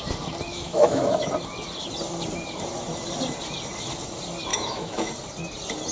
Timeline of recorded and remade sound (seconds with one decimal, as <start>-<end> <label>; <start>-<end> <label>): 0.0-0.5 recorded; 0.5-1.3 remade; 1.3-4.5 recorded; 4.5-5.1 remade; 5.1-5.9 recorded